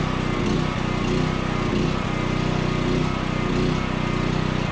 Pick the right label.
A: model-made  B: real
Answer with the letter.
B